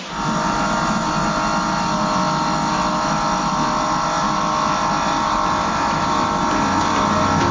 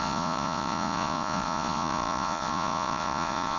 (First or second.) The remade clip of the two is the second